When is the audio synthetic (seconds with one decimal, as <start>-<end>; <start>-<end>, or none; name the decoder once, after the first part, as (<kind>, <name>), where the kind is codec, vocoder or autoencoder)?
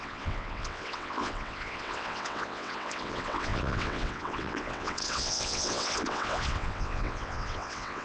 0.0-8.0 (vocoder, WaveNeXt)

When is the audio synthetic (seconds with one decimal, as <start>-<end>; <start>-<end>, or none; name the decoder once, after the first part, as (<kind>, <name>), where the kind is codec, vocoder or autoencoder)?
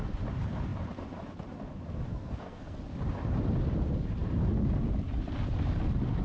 2.1-2.8 (codec, SNAC)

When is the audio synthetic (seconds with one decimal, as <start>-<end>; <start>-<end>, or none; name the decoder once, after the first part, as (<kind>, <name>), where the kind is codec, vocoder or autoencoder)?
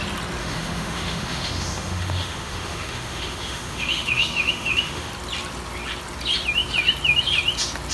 0.4-5.1 (autoencoder, DAC-VAE)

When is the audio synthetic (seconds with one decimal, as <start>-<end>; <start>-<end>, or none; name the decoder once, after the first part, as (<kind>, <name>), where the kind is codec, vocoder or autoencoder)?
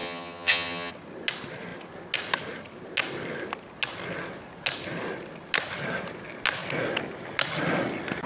0.0-0.9 (vocoder, HiFi-GAN)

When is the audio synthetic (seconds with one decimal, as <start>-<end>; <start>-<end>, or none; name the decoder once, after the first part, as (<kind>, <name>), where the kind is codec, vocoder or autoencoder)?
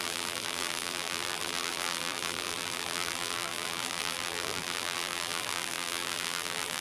0.0-6.8 (vocoder, BigVGAN v2)